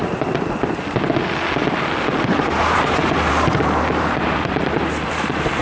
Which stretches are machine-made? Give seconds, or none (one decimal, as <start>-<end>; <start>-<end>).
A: 2.3-5.6